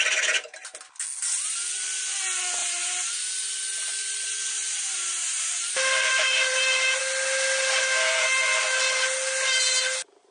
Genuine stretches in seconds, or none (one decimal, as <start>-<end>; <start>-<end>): 0.0-2.6; 3.1-3.7; 7.0-10.3